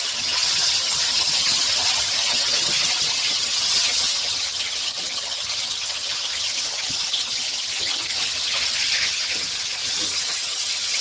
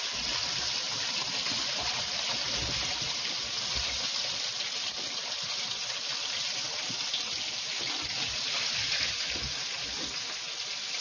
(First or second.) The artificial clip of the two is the first